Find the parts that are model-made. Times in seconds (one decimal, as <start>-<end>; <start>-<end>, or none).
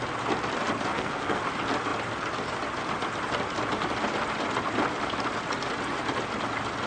0.9-1.4